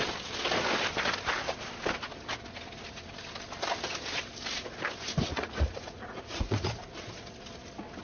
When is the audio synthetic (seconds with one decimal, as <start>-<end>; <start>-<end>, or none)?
5.3-6.9